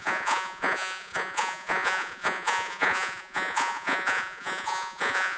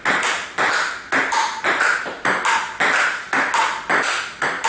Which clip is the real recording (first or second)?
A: second